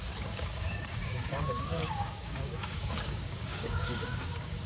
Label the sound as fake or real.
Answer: fake